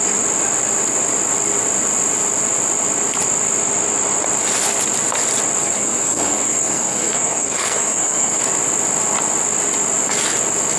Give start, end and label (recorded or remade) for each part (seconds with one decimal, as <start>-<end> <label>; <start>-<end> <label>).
0.0-5.6 recorded; 5.6-8.4 remade; 8.4-10.8 recorded